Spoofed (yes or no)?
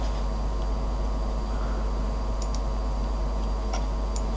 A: yes